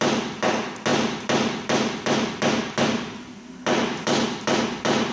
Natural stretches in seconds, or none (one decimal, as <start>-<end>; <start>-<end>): 0.0-5.1